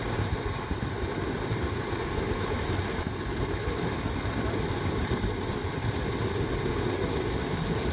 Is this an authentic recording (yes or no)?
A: yes